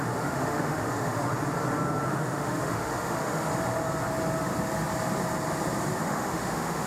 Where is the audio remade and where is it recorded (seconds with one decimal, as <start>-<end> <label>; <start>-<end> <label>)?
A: 0.0-1.3 remade; 1.3-2.1 recorded; 2.1-3.5 remade; 3.5-6.0 recorded; 6.0-6.9 remade